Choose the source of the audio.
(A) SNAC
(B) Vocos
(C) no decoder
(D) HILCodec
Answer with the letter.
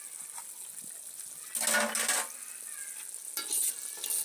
C